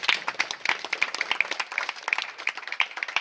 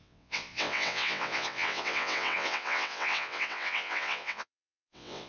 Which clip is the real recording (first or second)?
first